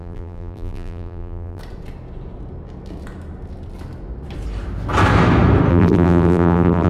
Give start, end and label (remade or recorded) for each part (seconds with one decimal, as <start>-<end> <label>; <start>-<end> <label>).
0.0-1.6 remade; 1.6-5.7 recorded; 5.7-6.9 remade